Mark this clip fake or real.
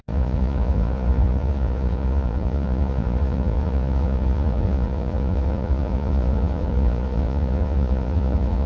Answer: fake